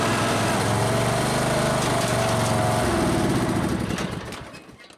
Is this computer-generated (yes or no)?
no